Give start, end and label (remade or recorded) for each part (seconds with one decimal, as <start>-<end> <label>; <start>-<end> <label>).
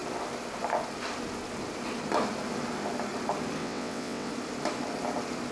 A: 0.0-3.6 recorded; 3.6-4.3 remade; 4.3-5.5 recorded